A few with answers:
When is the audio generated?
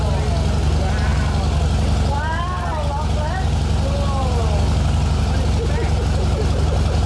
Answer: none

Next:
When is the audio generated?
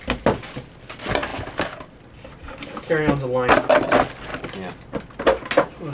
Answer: none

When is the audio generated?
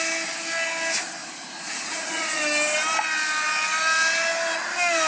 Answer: 1.2-2.4 (vocoder, Vocos)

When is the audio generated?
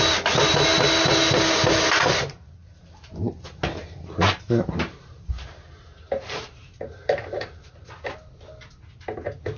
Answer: 2.0-3.3 (vocoder, BigVGAN v2); 3.8-7.7